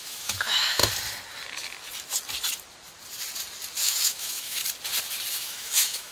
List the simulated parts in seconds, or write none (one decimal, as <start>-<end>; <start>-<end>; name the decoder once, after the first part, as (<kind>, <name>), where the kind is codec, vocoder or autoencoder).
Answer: 0.0-0.8 (autoencoder, DAC-VAE); 3.8-4.6; 5.3-6.1